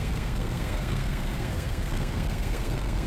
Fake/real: fake